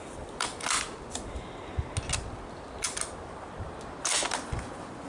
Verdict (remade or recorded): recorded